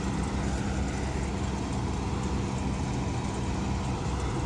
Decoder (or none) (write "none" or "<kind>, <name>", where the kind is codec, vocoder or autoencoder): none